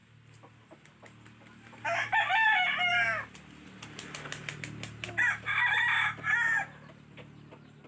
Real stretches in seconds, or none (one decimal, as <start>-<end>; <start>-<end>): 0.0-7.9